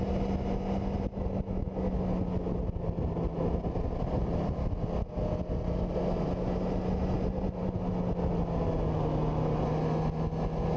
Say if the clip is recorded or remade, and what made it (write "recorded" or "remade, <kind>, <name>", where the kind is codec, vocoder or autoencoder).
recorded